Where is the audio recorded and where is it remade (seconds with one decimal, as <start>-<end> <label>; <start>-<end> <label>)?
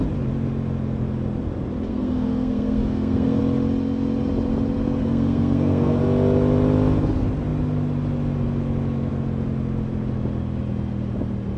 0.0-1.9 recorded; 1.9-3.4 remade; 3.4-5.0 recorded; 5.0-6.0 remade; 6.0-11.6 recorded